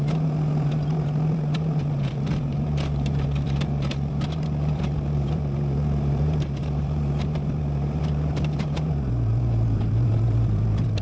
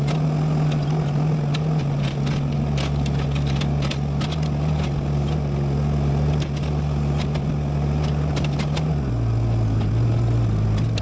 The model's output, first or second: first